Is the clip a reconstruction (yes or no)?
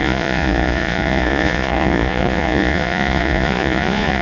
yes